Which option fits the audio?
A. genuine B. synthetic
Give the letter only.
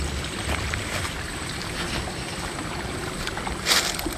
A